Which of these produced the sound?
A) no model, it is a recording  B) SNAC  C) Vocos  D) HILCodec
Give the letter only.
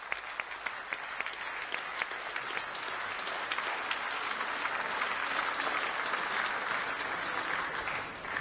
A